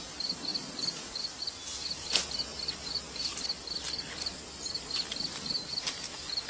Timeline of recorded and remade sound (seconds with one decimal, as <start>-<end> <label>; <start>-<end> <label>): 0.0-6.5 recorded